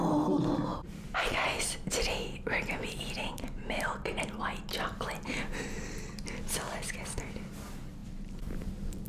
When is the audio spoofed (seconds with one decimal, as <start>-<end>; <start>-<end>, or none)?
0.7-4.4; 8.0-9.1

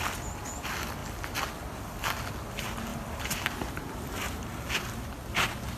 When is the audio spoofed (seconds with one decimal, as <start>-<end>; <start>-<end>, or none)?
2.9-4.4

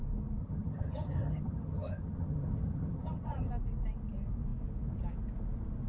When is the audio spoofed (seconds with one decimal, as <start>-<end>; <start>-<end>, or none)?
0.4-3.5

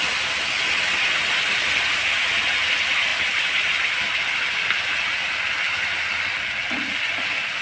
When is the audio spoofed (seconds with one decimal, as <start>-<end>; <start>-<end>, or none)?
none

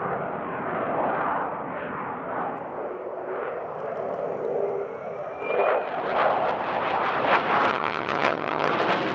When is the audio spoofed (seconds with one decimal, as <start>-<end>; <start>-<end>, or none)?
7.7-8.7

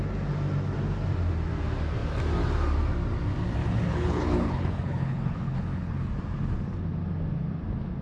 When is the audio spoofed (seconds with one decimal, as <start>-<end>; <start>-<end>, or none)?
3.6-6.1